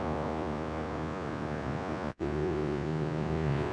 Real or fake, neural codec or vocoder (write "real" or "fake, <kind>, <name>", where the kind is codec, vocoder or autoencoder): fake, vocoder, Vocos